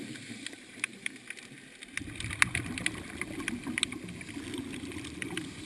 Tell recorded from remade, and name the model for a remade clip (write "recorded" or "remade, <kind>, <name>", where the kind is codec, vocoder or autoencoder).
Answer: recorded